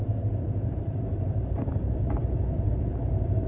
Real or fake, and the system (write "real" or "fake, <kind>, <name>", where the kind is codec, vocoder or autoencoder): fake, vocoder, BigVGAN v2